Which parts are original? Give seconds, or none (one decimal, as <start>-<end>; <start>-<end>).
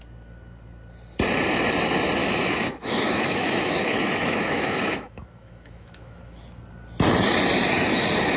0.0-2.2; 6.4-8.4